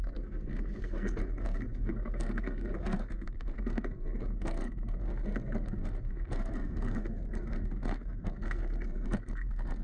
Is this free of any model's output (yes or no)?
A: no